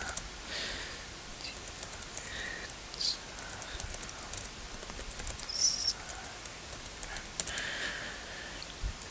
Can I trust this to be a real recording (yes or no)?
yes